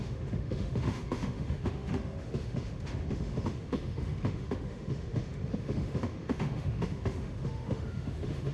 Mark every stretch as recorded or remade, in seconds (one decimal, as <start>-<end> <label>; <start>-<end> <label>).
0.0-8.5 remade